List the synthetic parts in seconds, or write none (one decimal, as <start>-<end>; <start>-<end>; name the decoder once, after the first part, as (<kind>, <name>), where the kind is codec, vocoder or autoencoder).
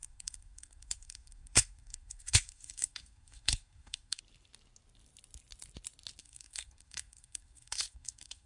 0.0-4.2 (codec, SNAC); 6.2-8.5